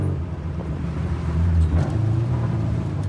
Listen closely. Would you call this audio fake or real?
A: fake